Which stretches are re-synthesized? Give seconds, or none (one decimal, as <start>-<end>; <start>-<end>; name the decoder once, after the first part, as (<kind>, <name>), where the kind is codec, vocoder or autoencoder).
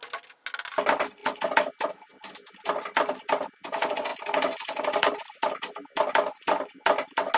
none